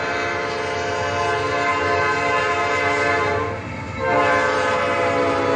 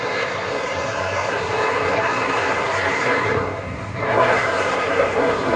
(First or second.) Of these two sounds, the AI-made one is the second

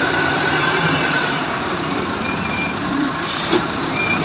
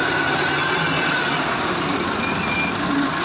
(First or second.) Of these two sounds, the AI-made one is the first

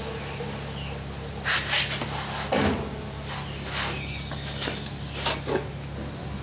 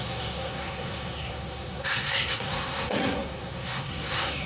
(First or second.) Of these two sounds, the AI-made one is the second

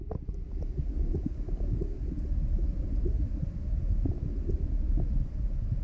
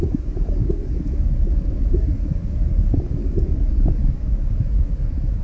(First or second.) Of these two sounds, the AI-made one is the second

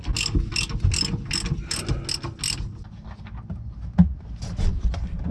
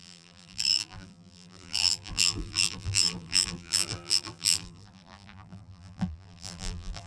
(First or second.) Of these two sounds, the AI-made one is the second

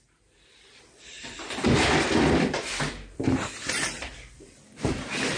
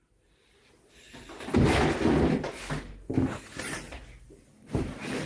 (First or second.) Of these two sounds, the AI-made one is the first